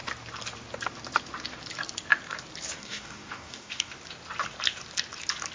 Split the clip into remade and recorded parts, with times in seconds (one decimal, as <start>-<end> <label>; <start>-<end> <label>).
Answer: 0.0-2.8 recorded; 2.8-3.9 remade; 3.9-5.5 recorded